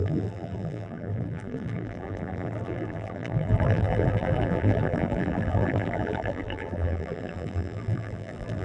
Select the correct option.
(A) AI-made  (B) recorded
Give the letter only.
A